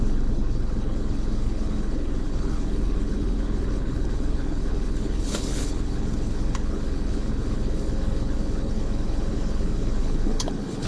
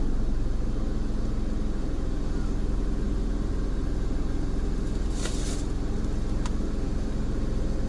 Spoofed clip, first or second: first